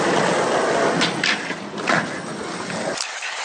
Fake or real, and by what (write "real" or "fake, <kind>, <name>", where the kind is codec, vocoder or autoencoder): real